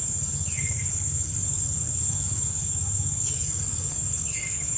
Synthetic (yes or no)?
yes